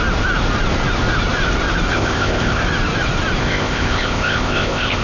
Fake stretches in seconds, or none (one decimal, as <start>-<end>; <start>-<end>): 1.9-2.6; 3.4-5.0